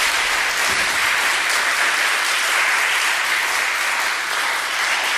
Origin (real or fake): real